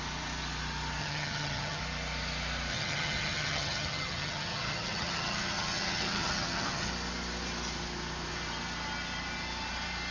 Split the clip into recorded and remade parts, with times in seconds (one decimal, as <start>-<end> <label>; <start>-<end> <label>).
0.0-1.0 recorded; 1.0-1.8 remade; 1.8-2.7 recorded; 2.7-6.9 remade; 6.9-10.1 recorded